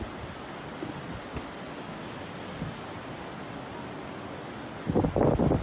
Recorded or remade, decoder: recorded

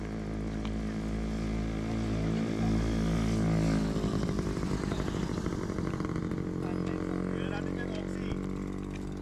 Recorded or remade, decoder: recorded